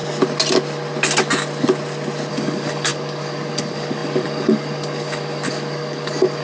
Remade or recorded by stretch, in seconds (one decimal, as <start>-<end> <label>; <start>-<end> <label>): 0.0-2.3 recorded; 2.3-6.4 remade